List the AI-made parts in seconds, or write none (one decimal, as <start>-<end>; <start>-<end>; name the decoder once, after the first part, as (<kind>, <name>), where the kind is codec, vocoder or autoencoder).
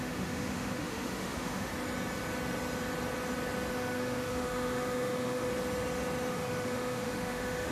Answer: 0.0-1.7 (autoencoder, DAC-VAE); 3.7-5.5; 6.3-7.7